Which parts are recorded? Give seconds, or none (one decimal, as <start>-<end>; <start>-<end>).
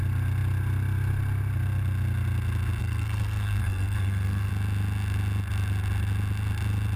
0.0-2.8; 4.5-7.0